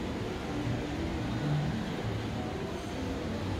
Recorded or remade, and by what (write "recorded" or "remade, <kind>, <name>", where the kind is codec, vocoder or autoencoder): recorded